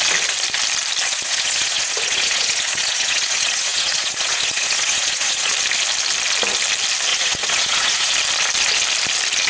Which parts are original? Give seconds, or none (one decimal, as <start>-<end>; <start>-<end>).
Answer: 0.0-1.1; 5.5-7.1; 8.1-9.5